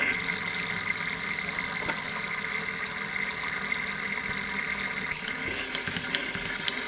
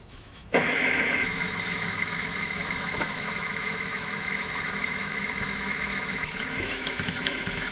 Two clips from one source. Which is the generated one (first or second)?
second